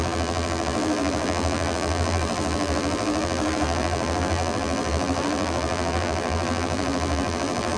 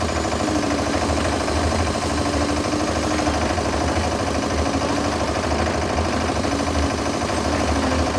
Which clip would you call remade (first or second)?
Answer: first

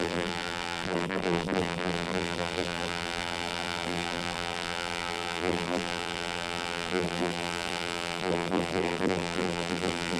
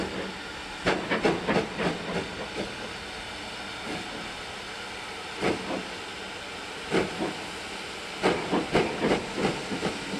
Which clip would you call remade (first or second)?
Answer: first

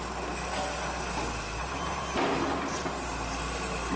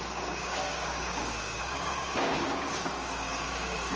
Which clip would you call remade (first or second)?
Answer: second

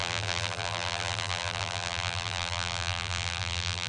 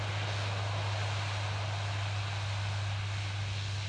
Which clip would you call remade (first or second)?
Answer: first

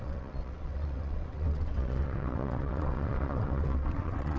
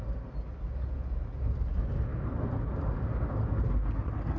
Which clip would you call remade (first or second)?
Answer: first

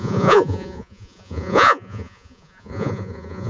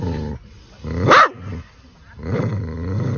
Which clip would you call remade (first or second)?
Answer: first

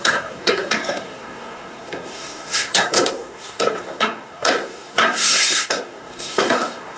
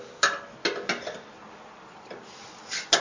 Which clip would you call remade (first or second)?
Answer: first